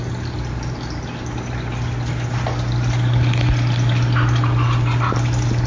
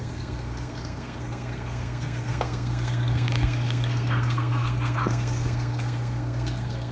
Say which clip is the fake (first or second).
second